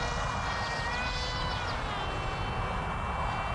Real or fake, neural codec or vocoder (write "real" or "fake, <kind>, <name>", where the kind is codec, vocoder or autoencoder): real